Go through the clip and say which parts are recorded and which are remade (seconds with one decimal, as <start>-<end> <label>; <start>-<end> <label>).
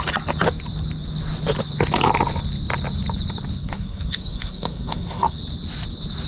0.0-3.6 recorded; 3.6-5.4 remade; 5.4-6.3 recorded